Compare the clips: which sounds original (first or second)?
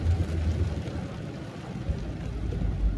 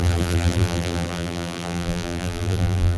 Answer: first